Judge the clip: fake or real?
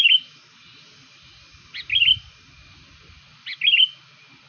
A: real